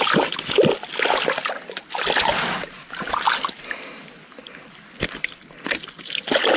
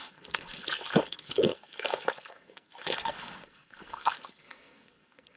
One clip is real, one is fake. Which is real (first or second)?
first